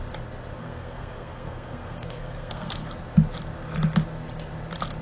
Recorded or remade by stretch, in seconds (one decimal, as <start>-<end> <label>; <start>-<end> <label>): 0.0-0.6 recorded; 0.6-2.9 remade; 2.9-5.0 recorded